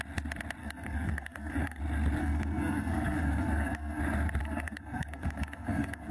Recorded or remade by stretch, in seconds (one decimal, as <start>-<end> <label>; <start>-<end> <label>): 0.0-0.6 recorded; 0.6-1.8 remade; 1.8-2.2 recorded; 2.2-4.0 remade; 4.0-4.4 recorded; 4.4-6.1 remade